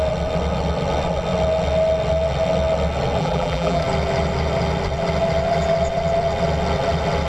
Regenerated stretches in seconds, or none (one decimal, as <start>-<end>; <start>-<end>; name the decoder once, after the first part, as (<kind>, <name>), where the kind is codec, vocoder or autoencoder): 3.2-3.8 (vocoder, BigVGAN v2)